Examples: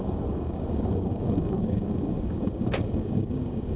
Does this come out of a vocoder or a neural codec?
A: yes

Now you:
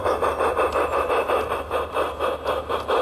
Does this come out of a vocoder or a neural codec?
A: no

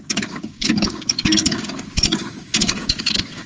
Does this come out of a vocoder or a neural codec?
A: yes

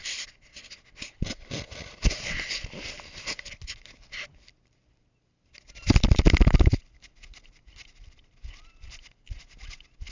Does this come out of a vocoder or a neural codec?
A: no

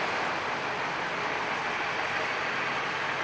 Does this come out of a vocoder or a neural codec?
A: no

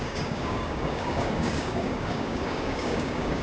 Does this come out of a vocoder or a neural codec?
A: yes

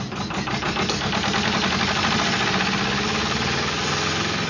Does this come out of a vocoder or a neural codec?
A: no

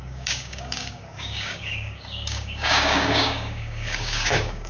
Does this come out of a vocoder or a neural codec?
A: yes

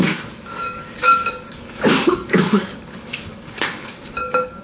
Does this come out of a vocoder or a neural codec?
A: yes